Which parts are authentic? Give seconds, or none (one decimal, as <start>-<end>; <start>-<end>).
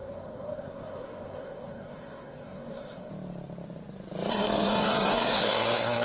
3.1-4.3